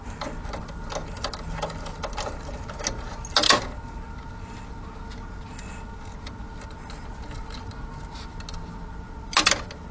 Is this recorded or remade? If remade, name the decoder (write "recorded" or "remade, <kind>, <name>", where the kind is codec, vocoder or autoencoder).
recorded